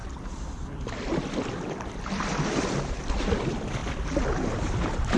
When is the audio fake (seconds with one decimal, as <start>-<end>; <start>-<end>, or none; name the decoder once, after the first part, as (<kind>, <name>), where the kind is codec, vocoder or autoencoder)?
0.0-3.8 (vocoder, BigVGAN v2); 4.5-5.2

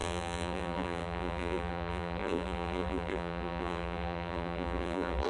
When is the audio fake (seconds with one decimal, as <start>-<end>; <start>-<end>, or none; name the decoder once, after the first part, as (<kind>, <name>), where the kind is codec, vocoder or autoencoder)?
0.0-5.3 (vocoder, BigVGAN v2)